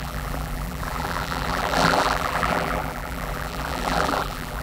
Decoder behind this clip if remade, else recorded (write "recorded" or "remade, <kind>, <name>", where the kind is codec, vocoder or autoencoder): remade, vocoder, BigVGAN v2